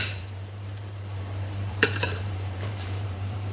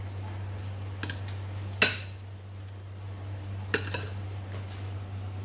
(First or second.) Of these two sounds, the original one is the second